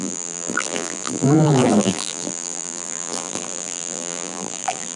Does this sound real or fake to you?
fake